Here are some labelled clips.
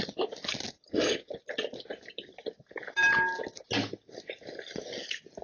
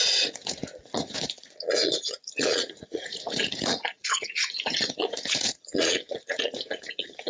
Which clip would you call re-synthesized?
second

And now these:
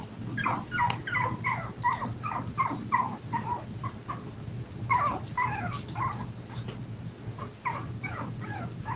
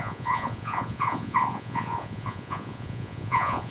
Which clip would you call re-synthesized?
second